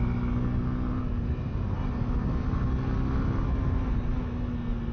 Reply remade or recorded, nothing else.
recorded